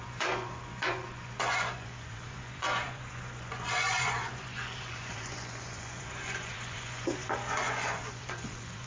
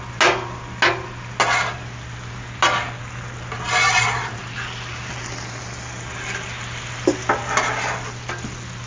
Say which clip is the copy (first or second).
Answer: first